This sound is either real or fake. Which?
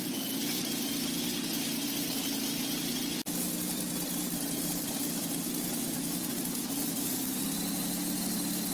real